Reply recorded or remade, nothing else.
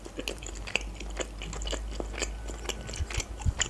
recorded